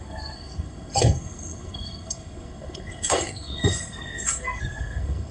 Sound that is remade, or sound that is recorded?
remade